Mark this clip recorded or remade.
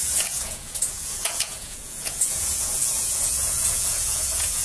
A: remade